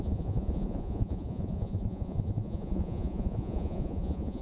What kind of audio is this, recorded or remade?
remade